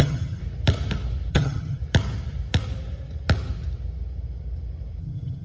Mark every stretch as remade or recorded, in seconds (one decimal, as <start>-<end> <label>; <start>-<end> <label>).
0.0-0.4 remade; 0.4-1.3 recorded; 1.3-1.8 remade; 1.8-5.0 recorded; 5.0-5.4 remade